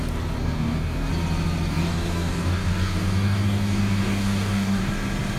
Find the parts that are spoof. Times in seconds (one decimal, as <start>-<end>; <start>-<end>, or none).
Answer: 0.4-1.1; 1.7-4.9

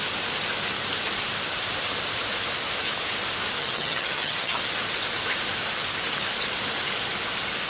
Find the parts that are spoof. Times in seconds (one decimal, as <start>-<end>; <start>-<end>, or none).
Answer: 3.6-4.6

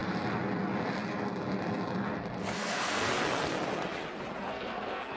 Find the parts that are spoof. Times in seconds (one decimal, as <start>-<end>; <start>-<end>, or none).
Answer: 2.4-3.1; 4.4-5.2